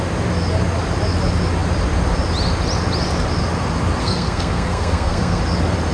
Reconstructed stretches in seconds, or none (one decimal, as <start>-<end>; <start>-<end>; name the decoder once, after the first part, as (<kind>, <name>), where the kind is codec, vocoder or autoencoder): 4.0-5.4 (codec, SNAC)